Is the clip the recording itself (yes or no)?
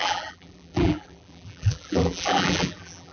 no